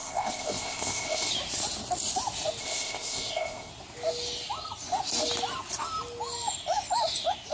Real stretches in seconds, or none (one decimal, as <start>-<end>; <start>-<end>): 1.3-2.6; 3.7-7.5